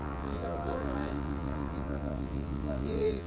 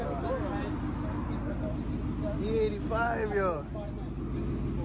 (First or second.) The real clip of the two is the second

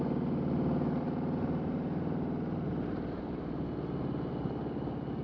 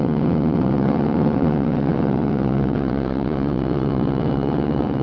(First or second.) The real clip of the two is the first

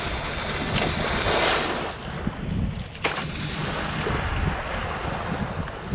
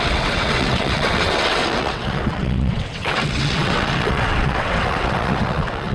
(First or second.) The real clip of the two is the first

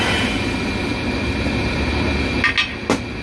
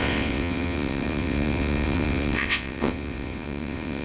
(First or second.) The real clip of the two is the first